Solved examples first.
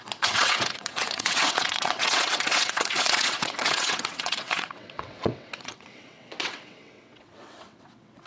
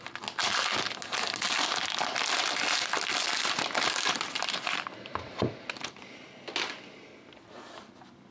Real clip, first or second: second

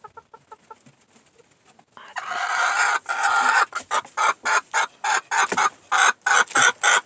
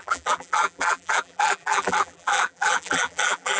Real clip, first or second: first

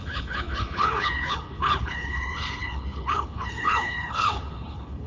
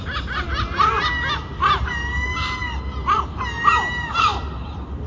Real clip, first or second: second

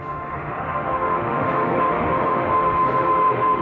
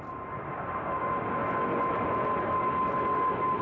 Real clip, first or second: second